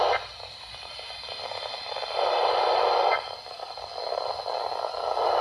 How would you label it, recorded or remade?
recorded